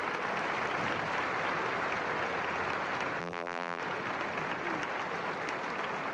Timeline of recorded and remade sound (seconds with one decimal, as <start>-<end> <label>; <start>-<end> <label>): 0.0-3.2 recorded; 3.2-3.8 remade; 3.8-6.1 recorded

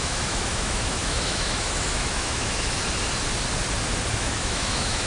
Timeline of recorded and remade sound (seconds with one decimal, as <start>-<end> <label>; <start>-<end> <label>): 0.0-2.8 remade; 2.8-4.1 recorded; 4.1-5.1 remade

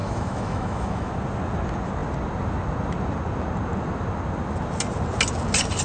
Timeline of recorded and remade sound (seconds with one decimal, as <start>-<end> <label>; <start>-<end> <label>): 0.0-1.1 remade; 1.1-5.8 recorded

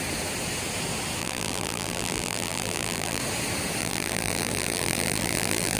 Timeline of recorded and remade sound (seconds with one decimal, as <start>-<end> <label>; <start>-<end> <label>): 0.0-1.2 recorded; 1.2-3.2 remade; 3.2-3.8 recorded; 3.8-5.8 remade

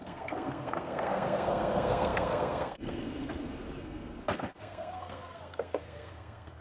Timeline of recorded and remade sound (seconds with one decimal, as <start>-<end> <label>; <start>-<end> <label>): 0.0-6.6 remade

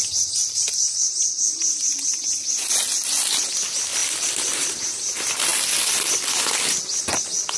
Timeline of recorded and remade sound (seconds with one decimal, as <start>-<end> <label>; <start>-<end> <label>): 0.0-7.6 recorded